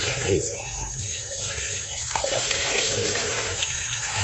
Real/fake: fake